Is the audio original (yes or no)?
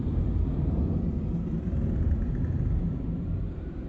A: no